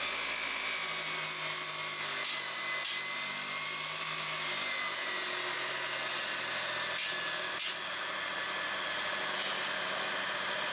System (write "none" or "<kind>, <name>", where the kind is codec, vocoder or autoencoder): none